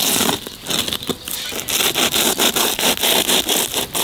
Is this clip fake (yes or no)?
no